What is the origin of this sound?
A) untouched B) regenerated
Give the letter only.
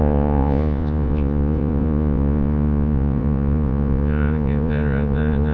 B